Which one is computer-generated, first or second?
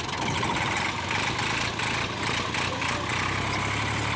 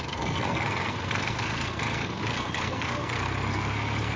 second